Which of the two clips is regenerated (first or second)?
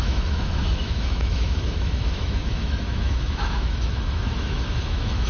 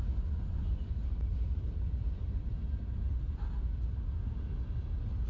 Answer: first